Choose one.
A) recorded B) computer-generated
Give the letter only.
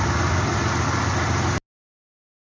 A